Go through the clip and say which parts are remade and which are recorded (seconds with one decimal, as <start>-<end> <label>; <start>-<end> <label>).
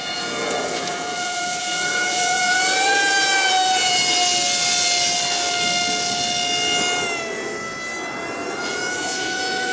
0.0-4.0 remade; 4.0-8.6 recorded; 8.6-9.7 remade